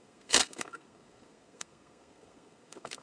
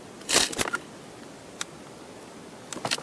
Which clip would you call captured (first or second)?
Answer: second